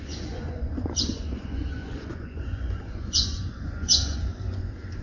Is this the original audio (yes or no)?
no